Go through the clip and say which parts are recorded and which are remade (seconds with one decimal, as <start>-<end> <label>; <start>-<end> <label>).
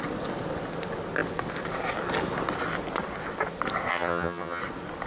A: 0.0-3.9 recorded; 3.9-4.6 remade; 4.6-5.1 recorded